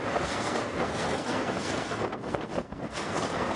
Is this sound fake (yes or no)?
yes